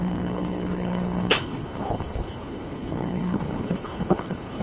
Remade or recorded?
remade